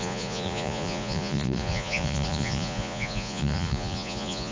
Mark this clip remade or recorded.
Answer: remade